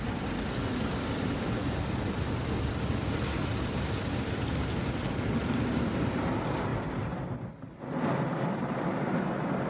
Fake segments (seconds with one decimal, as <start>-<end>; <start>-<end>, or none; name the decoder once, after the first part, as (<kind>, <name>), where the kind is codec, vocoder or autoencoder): 6.7-7.6 (vocoder, BigVGAN v2)